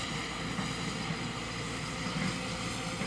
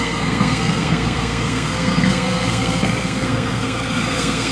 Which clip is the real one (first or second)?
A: first